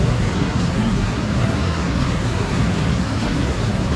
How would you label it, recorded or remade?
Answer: remade